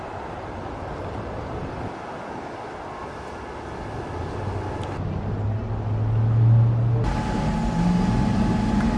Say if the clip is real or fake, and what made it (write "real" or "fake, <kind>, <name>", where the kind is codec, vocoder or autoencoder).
real